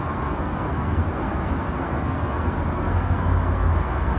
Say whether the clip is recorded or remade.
remade